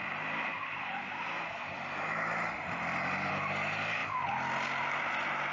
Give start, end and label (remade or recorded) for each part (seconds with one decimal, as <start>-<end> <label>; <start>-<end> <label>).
0.0-5.5 recorded